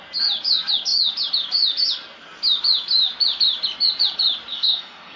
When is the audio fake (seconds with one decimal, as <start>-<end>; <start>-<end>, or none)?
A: 4.5-5.2